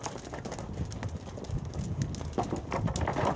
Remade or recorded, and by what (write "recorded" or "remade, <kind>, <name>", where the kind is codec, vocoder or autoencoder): recorded